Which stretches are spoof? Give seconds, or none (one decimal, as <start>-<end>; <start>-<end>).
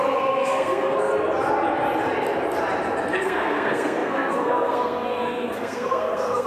0.0-1.1; 3.2-6.5